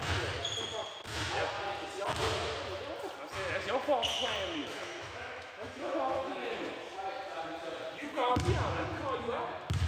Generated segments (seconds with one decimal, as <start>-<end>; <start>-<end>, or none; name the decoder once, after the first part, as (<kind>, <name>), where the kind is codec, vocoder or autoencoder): 4.6-6.7 (autoencoder, DAC-VAE)